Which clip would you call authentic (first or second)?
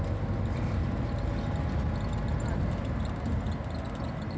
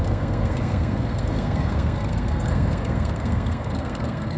first